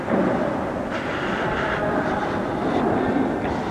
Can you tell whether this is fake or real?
real